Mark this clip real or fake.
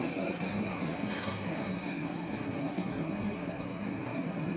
fake